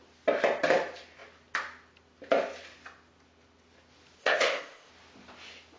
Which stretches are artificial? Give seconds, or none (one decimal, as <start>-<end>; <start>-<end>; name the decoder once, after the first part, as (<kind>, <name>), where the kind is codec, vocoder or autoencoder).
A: 4.2-4.9 (codec, ZipCodec)